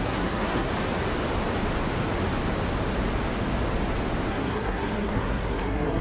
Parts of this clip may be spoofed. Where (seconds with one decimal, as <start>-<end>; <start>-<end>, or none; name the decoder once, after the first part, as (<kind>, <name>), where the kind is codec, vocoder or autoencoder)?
0.0-0.7 (codec, SNAC); 4.3-6.0